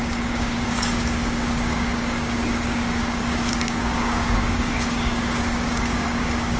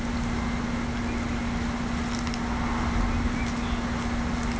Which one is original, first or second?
second